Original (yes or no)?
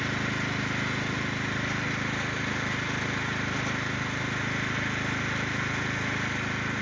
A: yes